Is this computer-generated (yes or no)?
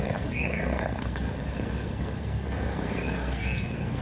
yes